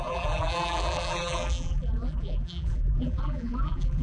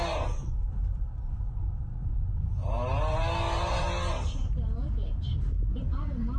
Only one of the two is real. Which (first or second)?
second